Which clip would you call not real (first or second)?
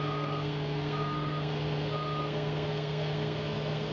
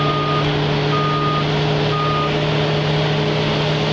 first